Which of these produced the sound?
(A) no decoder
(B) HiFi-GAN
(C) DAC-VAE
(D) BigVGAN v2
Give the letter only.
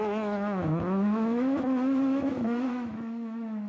C